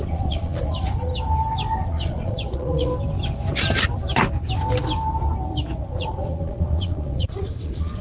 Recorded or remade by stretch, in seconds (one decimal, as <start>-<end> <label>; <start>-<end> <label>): 0.0-1.1 remade; 1.1-1.8 recorded; 1.8-2.9 remade; 2.9-5.9 recorded; 5.9-8.0 remade